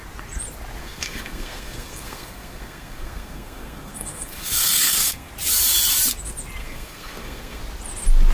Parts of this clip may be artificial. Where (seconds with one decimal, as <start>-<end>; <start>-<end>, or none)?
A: 0.8-5.3; 6.6-7.6